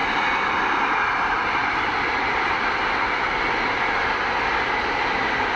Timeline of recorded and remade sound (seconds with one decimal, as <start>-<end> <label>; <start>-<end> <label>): 0.0-5.6 recorded